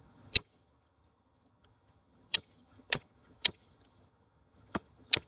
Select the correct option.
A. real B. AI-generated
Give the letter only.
B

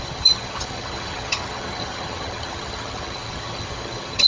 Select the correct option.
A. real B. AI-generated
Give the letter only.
B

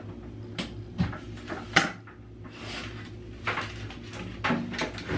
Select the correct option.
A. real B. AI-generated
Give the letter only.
A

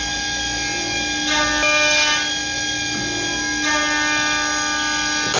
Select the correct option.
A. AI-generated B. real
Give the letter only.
B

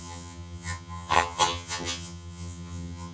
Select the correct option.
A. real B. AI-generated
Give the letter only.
B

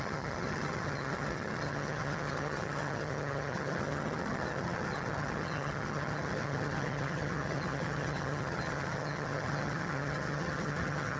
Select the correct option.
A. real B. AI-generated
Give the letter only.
B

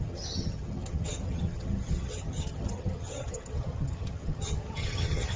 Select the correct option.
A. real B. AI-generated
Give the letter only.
B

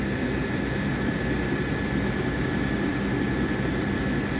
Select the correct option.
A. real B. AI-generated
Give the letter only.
A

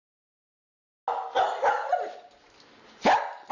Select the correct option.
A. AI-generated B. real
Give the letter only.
B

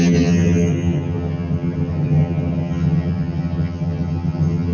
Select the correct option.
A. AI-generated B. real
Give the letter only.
A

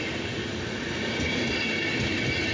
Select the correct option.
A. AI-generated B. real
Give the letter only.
B